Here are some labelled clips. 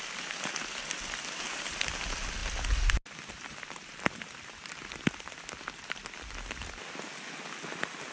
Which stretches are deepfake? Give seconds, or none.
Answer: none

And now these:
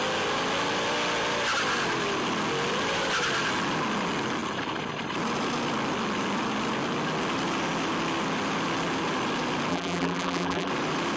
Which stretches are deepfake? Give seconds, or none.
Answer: 9.7-10.7 (vocoder, BigVGAN v2)